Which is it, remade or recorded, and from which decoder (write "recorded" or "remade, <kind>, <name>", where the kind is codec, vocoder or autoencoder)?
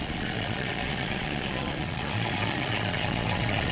remade, vocoder, Vocos